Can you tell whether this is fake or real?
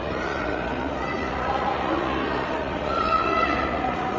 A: fake